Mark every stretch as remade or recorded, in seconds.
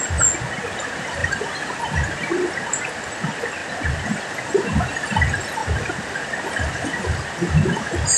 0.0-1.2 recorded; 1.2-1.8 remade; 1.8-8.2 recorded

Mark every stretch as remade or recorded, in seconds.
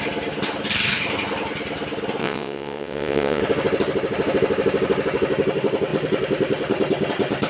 0.0-2.2 recorded; 2.2-3.4 remade; 3.4-7.5 recorded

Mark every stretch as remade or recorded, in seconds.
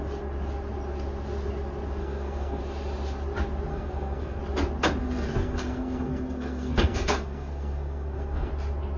0.0-2.0 recorded; 2.0-2.6 remade; 2.6-3.7 recorded; 3.7-4.4 remade; 4.4-5.0 recorded; 5.0-8.5 remade; 8.5-9.0 recorded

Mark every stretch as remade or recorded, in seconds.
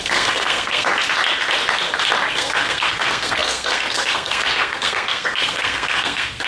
0.0-0.9 remade; 0.9-2.3 recorded; 2.3-6.5 remade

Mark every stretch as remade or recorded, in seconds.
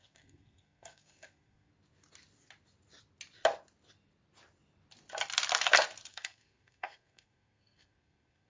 0.0-1.7 remade; 1.7-6.1 recorded; 6.1-8.5 remade